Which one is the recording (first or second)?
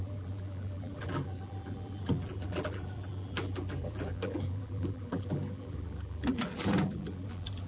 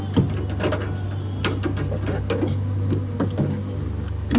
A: second